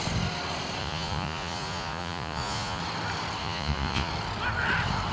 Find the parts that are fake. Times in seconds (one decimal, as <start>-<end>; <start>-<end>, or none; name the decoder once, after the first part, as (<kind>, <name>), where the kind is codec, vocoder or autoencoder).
0.8-2.8 (vocoder, Vocos); 3.4-4.1